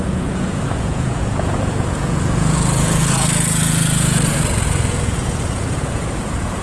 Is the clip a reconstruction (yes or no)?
yes